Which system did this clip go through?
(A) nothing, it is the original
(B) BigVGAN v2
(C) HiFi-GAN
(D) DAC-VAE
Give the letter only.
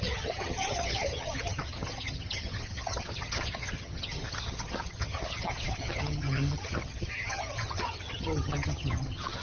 C